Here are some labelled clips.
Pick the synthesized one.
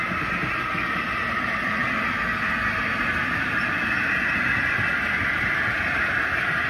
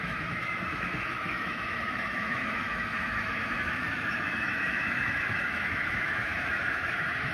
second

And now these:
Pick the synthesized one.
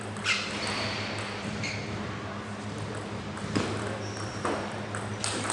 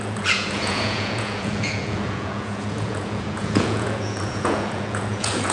second